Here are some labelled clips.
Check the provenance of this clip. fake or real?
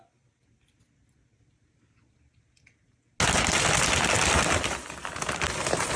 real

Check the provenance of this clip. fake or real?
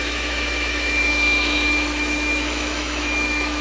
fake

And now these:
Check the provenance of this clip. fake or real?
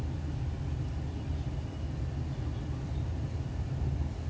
real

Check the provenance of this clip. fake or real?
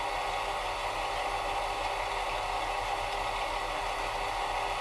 real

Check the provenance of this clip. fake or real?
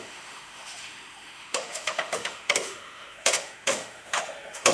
fake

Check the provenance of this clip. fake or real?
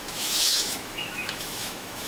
fake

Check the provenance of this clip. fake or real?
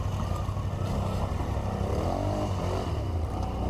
real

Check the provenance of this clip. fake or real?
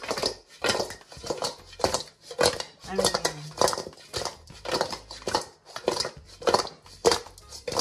real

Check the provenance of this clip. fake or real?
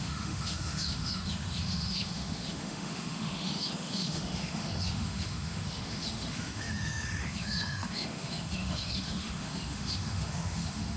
fake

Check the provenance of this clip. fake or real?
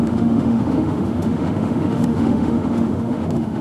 fake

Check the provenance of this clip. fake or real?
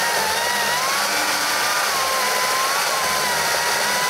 real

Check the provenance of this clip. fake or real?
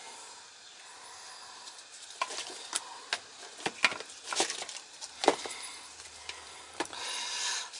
real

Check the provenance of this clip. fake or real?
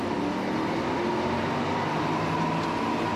real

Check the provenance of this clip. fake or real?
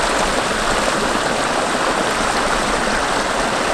real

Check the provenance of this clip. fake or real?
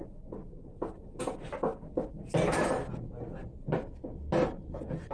real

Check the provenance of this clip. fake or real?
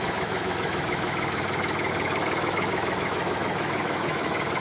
fake